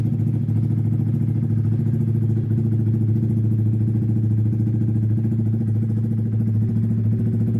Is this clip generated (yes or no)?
no